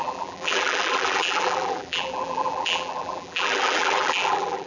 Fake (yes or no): yes